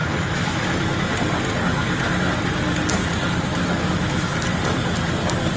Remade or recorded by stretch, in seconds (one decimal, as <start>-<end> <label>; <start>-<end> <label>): 0.0-1.1 remade; 1.1-3.5 recorded; 3.5-4.3 remade; 4.3-5.6 recorded